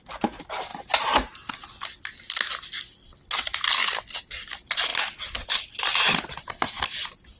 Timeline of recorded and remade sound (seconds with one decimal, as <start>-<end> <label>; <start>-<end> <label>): 0.0-0.7 recorded; 0.7-1.5 remade; 1.5-7.4 recorded